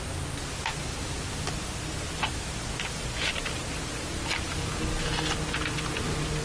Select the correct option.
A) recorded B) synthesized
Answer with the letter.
A